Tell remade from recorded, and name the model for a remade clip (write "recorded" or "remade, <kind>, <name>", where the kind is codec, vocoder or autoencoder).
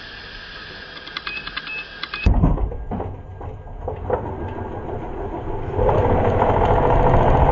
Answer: recorded